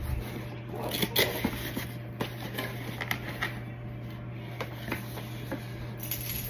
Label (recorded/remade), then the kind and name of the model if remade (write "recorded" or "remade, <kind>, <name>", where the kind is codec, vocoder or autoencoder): recorded